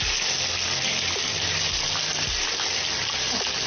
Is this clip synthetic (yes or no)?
no